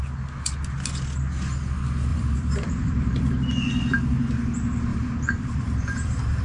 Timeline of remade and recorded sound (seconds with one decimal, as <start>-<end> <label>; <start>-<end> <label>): 0.0-2.1 recorded; 2.1-3.4 remade; 3.4-4.9 recorded; 4.9-6.4 remade